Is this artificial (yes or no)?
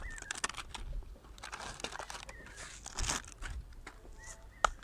no